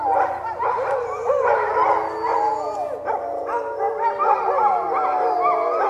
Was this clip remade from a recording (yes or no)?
no